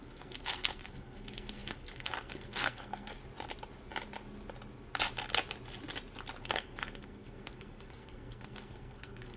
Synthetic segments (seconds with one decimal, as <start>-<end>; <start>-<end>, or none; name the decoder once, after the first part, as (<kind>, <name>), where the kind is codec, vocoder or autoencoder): 0.0-3.2 (codec, SNAC); 6.4-9.4

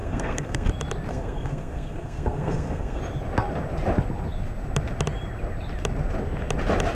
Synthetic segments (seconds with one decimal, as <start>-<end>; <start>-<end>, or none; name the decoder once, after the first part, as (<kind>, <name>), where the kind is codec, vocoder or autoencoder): 0.0-0.7 (codec, SNAC); 1.1-3.0

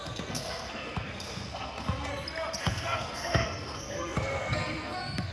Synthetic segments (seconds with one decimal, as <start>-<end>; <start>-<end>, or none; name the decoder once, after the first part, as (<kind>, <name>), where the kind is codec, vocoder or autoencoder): 0.0-2.1 (codec, SNAC); 2.6-5.3

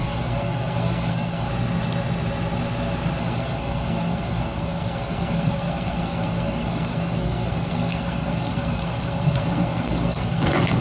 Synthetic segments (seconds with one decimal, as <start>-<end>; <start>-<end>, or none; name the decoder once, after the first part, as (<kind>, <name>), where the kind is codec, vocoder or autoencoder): 0.0-1.5 (codec, SNAC); 3.2-10.8